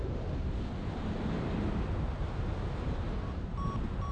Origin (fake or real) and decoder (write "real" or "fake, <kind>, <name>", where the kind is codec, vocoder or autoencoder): real